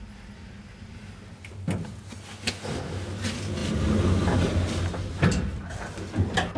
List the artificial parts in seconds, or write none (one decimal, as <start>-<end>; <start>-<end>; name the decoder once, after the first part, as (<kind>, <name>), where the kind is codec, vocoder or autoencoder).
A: none